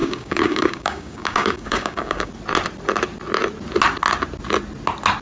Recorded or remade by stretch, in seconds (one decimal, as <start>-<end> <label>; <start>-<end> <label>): 0.0-2.3 remade; 2.3-5.2 recorded